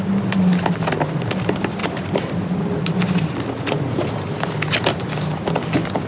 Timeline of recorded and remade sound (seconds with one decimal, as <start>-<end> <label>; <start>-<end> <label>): 0.0-6.1 recorded